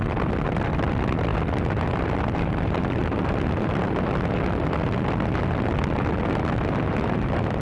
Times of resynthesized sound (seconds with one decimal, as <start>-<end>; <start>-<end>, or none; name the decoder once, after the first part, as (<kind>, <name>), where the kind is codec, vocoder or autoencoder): 0.0-1.3 (vocoder, BigVGAN v2); 2.1-3.0; 6.7-7.6